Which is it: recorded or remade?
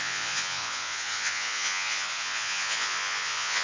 remade